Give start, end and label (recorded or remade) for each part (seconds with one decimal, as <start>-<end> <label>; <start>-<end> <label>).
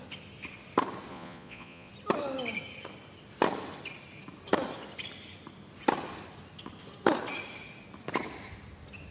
0.0-1.1 recorded; 1.1-1.9 remade; 1.9-9.1 recorded